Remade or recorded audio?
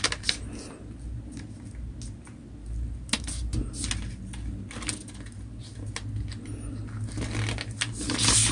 recorded